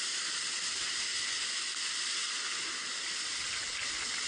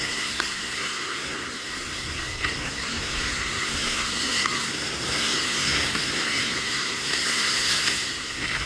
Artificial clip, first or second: second